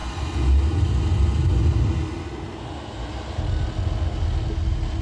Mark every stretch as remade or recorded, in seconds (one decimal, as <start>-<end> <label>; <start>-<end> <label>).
0.0-5.0 recorded